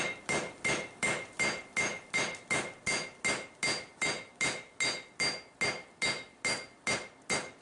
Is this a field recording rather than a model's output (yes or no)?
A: yes